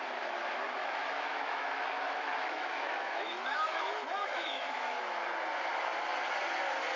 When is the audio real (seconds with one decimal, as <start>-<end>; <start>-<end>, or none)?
0.0-0.8; 5.0-7.0